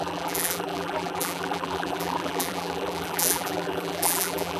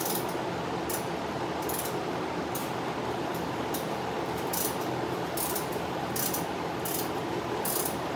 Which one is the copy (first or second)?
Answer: first